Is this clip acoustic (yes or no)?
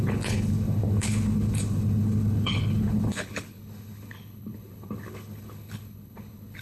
no